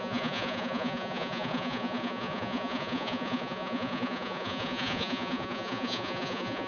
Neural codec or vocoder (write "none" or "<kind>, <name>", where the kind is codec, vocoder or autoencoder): vocoder, Vocos